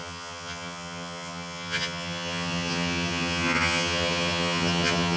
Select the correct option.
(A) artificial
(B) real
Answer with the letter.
A